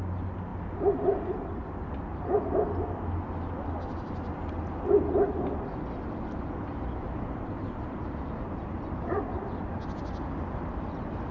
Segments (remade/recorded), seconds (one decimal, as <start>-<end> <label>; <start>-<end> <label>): 0.0-11.3 recorded